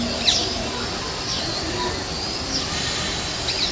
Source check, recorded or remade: recorded